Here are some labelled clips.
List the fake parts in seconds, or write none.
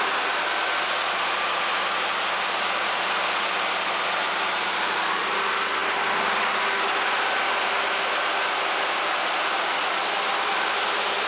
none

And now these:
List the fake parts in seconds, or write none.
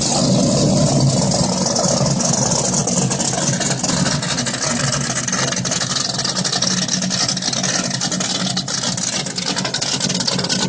none